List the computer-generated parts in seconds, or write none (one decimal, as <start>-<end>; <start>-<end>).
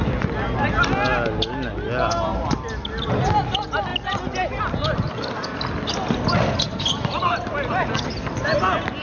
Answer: none